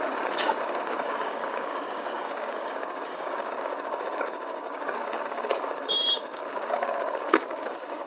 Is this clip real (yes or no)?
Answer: no